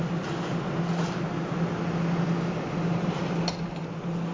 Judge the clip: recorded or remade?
recorded